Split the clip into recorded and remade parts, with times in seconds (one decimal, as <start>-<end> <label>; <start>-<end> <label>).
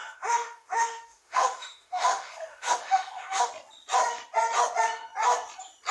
0.0-3.5 remade; 3.5-5.9 recorded